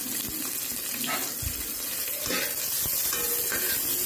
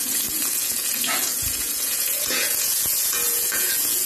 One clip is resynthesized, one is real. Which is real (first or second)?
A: first